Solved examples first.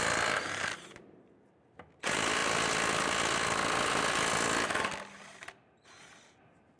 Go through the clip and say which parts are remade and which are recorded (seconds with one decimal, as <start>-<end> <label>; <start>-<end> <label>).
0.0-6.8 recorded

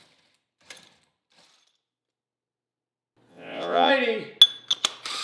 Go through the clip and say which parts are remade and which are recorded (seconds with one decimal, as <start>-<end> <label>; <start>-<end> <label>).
0.0-3.3 recorded; 3.3-3.9 remade; 3.9-5.2 recorded

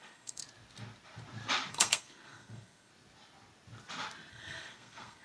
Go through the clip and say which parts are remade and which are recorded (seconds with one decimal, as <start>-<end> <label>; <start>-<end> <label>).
0.0-0.4 remade; 0.4-1.7 recorded; 1.7-2.9 remade; 2.9-4.3 recorded; 4.3-5.2 remade

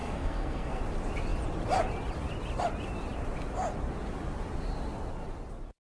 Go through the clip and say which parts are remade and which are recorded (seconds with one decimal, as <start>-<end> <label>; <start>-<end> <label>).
0.0-0.8 remade; 0.8-5.8 recorded

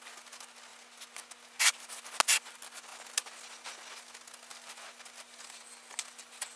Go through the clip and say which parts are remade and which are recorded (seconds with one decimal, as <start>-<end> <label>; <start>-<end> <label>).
0.0-6.6 recorded